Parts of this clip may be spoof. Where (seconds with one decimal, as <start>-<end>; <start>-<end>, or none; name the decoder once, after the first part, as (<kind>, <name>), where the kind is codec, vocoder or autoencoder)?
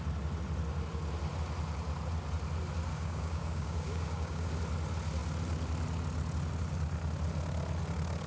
2.9-4.5 (codec, DAC)